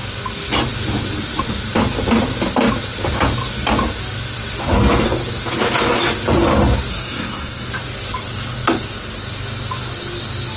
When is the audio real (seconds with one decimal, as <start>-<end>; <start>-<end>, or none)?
0.0-6.9; 7.7-10.6